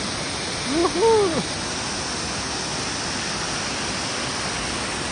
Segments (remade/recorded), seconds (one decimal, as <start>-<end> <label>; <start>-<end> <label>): 0.0-5.1 recorded